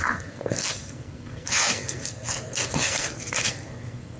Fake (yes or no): yes